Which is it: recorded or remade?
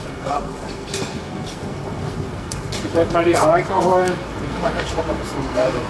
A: remade